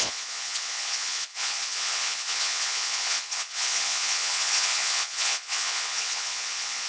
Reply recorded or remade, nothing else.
remade